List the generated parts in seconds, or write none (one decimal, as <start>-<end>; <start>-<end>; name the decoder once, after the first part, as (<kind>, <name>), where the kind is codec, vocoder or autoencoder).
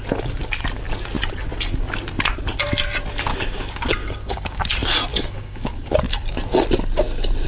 3.3-4.6 (codec, DAC); 5.1-6.0